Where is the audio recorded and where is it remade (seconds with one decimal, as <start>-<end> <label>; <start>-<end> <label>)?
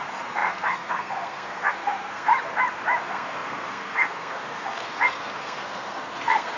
0.0-2.3 remade; 2.3-3.0 recorded; 3.0-6.6 remade